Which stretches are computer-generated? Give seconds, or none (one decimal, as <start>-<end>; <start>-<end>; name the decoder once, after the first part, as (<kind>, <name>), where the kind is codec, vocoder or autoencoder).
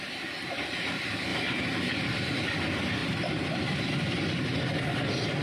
1.3-2.4 (vocoder, BigVGAN v2)